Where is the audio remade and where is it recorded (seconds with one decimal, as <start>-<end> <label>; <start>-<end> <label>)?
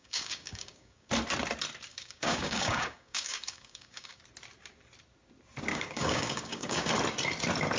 0.0-1.1 remade; 1.1-1.9 recorded; 1.9-4.2 remade; 4.2-5.7 recorded; 5.7-6.9 remade; 6.9-7.8 recorded